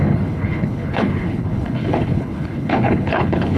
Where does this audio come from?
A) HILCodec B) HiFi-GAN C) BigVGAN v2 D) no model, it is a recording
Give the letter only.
A